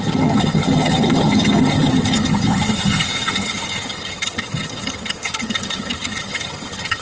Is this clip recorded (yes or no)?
no